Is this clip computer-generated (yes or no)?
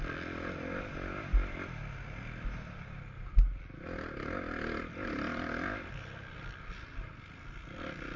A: no